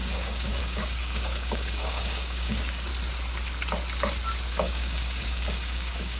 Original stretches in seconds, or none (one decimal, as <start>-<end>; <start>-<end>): 2.9-4.5